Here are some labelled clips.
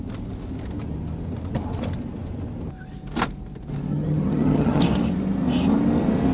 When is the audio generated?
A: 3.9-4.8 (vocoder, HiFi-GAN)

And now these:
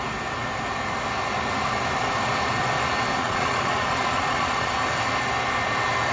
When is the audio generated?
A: 3.2-4.7 (vocoder, Vocos)

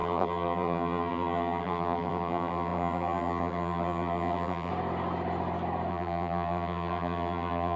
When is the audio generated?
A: 0.0-4.7 (vocoder, BigVGAN v2); 5.9-7.8

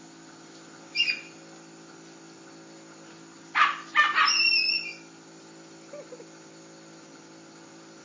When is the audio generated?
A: none

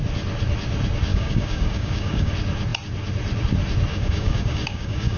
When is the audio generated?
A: 1.1-2.3 (codec, DAC); 3.9-5.2

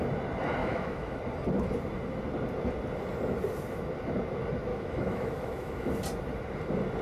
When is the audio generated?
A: 0.6-1.2 (autoencoder, DAC-VAE); 4.7-5.9

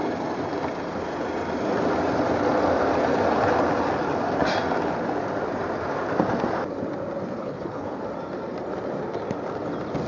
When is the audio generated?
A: 7.4-8.0 (codec, HILCodec)

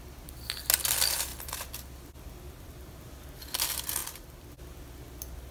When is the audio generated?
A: 1.3-3.2 (vocoder, BigVGAN v2); 4.0-4.5